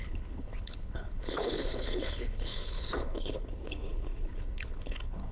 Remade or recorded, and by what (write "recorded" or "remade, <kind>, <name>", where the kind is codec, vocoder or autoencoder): remade, codec, HILCodec